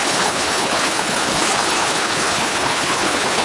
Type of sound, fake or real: fake